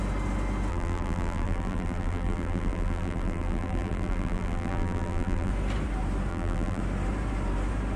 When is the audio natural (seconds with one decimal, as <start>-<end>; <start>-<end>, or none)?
0.0-0.7; 5.5-6.3; 6.8-8.0